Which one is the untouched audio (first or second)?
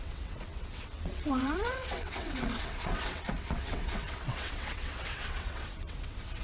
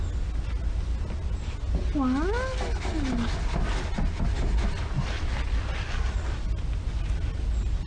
second